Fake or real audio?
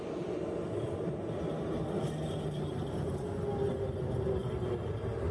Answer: real